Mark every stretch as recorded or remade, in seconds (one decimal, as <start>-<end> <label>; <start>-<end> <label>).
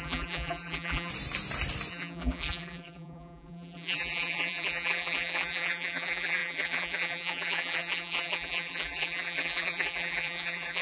0.0-1.1 remade; 1.1-1.9 recorded; 1.9-10.8 remade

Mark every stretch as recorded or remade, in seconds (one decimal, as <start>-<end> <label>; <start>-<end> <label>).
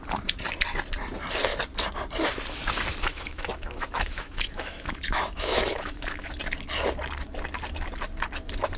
0.0-3.1 recorded; 3.1-6.3 remade; 6.3-8.8 recorded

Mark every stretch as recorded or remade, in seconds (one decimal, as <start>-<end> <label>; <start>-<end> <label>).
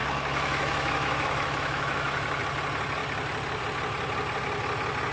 0.0-2.4 remade; 2.4-5.1 recorded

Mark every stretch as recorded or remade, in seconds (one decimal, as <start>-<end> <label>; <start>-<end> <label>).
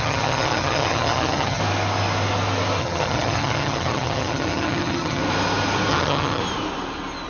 0.0-1.6 remade; 1.6-2.8 recorded; 2.8-5.2 remade; 5.2-5.9 recorded; 5.9-6.4 remade; 6.4-7.3 recorded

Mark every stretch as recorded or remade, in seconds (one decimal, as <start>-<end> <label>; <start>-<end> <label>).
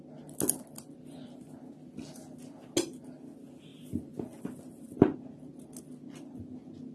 0.0-3.7 recorded; 3.7-4.4 remade; 4.4-6.9 recorded